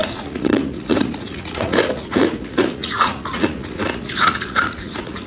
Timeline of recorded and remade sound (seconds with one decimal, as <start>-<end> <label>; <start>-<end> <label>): 0.0-5.3 remade